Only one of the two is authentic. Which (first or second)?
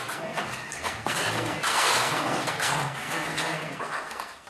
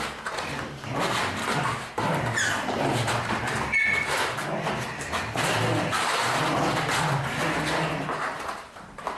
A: second